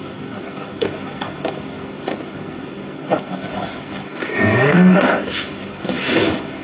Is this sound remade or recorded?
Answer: remade